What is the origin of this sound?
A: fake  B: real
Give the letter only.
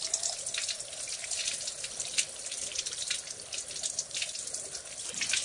B